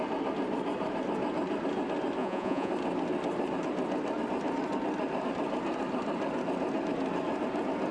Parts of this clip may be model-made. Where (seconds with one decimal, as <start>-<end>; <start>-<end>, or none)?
2.2-2.7